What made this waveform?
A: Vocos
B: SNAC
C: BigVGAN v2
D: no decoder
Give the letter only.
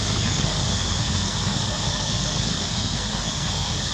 B